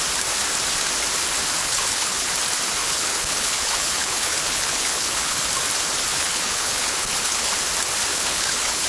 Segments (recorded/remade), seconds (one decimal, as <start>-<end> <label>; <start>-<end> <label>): 0.0-1.6 recorded; 1.6-2.3 remade; 2.3-2.8 recorded; 2.8-5.5 remade; 5.5-6.1 recorded; 6.1-7.5 remade; 7.5-8.1 recorded; 8.1-8.9 remade